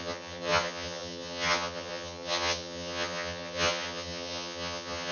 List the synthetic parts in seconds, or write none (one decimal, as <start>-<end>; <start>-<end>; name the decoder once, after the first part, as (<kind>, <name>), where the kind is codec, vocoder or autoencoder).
0.0-5.1 (vocoder, HiFi-GAN)